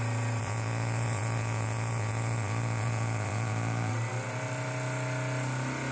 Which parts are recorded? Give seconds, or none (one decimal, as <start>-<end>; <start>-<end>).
0.0-0.4; 3.9-5.9